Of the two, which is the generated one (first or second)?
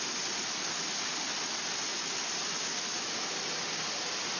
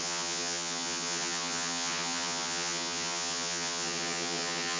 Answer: second